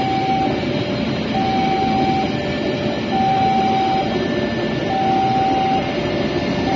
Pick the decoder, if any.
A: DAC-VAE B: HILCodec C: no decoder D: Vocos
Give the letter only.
C